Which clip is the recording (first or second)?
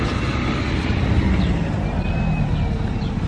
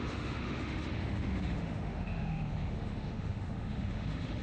first